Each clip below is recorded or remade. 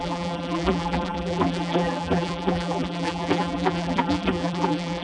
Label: remade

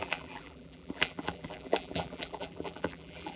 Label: remade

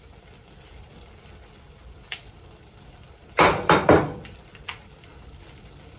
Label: remade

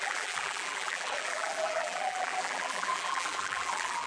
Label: remade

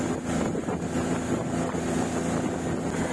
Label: recorded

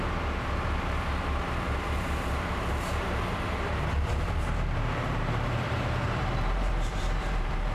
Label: remade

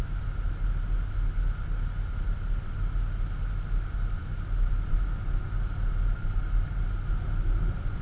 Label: recorded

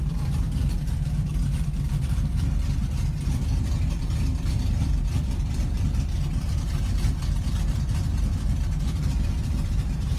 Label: remade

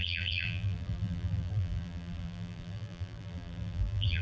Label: remade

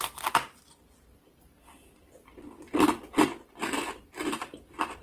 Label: remade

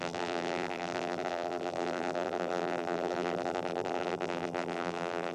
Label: remade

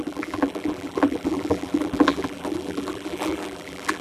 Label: remade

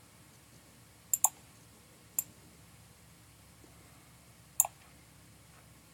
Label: recorded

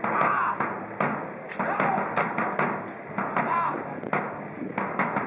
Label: recorded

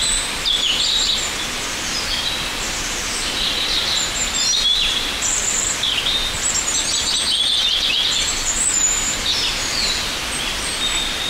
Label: remade